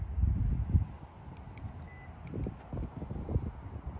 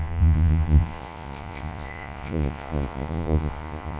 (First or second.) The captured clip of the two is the first